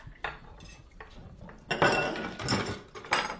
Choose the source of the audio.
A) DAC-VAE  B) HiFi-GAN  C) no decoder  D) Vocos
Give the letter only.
C